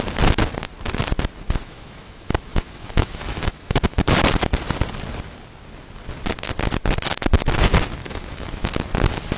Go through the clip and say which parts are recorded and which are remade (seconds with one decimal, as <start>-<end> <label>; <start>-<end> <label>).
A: 0.0-1.6 recorded; 1.6-4.0 remade; 4.0-8.0 recorded; 8.0-8.7 remade; 8.7-9.4 recorded